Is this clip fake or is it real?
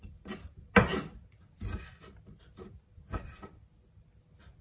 real